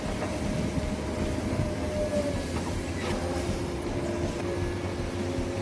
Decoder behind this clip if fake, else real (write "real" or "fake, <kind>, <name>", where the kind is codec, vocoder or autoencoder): real